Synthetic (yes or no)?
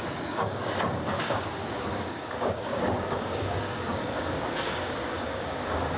yes